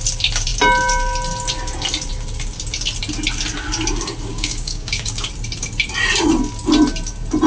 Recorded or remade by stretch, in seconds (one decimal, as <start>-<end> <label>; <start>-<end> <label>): 0.0-4.3 recorded; 4.3-5.3 remade; 5.3-7.5 recorded